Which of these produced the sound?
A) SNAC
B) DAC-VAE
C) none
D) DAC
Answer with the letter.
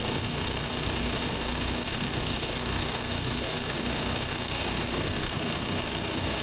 D